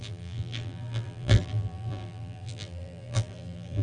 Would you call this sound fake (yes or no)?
yes